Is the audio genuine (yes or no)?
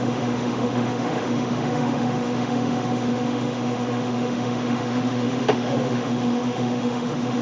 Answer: no